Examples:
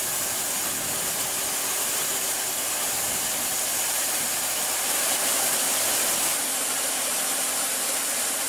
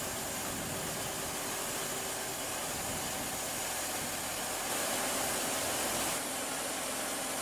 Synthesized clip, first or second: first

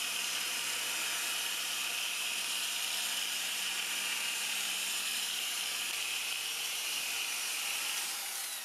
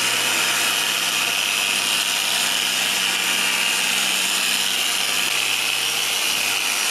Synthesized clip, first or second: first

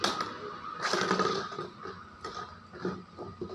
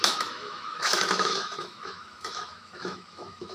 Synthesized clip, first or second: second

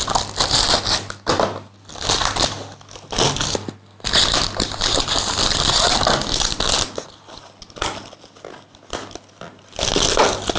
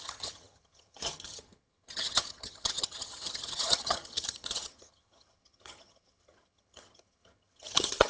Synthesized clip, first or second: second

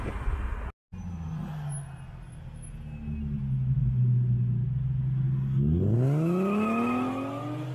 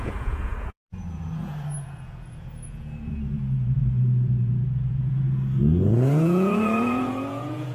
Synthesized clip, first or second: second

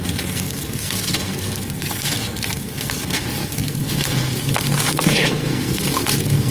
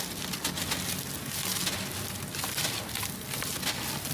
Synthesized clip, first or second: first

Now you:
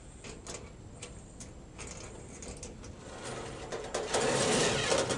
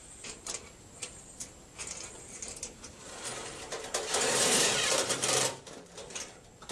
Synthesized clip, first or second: second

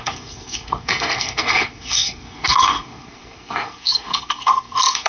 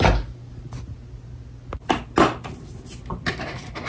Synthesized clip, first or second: first